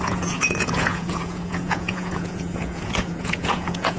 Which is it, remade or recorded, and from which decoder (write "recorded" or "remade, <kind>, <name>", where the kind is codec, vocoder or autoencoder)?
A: remade, vocoder, Vocos